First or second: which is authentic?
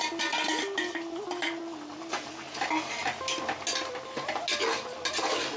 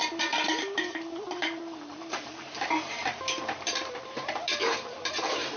first